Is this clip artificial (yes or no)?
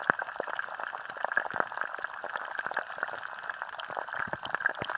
no